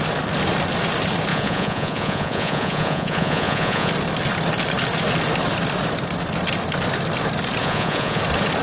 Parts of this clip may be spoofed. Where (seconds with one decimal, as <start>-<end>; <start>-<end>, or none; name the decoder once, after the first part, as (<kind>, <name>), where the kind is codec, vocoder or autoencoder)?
1.3-3.9 (vocoder, Vocos); 7.6-8.2